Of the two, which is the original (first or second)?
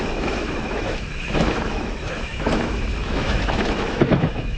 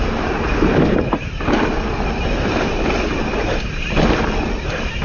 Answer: second